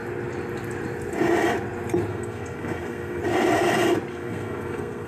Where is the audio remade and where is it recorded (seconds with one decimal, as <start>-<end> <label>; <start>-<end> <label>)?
0.0-2.1 recorded; 2.1-3.2 remade; 3.2-4.1 recorded; 4.1-5.1 remade